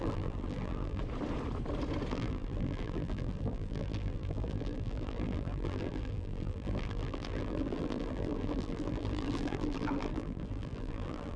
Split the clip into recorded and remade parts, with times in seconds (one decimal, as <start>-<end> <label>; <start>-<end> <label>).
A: 0.0-1.0 remade; 1.0-2.1 recorded; 2.1-11.4 remade